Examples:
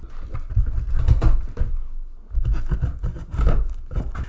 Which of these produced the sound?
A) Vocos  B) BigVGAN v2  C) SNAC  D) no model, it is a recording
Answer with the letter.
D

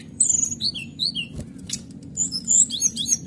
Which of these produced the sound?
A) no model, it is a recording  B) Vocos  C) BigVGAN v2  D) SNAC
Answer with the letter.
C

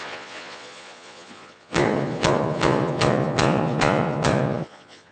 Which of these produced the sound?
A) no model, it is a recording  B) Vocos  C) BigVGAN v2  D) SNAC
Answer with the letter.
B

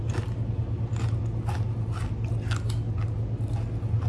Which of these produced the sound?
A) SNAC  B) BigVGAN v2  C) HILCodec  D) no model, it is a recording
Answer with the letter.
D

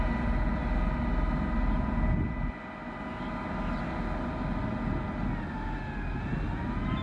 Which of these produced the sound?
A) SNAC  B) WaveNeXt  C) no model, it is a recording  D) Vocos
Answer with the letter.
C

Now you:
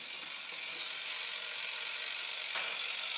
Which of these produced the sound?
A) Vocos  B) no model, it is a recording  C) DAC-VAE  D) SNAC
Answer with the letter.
B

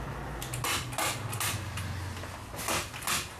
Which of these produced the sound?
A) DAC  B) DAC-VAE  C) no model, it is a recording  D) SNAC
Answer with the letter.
C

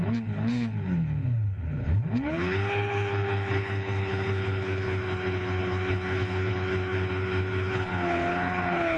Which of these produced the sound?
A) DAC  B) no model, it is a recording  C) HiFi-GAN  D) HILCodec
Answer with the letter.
D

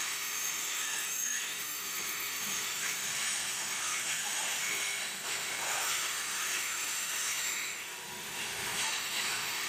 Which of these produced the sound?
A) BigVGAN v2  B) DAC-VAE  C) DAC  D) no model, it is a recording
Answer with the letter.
B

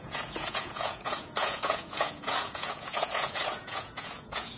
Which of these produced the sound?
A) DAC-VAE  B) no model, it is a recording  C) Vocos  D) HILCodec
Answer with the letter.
C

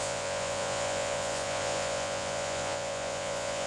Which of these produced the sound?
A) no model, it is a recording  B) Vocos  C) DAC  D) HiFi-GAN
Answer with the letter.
B